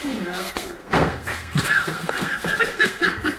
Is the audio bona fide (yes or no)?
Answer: no